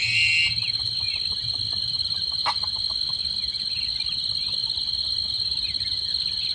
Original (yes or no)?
yes